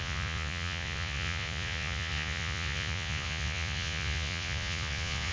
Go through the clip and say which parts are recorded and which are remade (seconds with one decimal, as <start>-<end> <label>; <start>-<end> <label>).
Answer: 0.0-5.3 remade